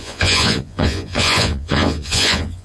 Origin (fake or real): fake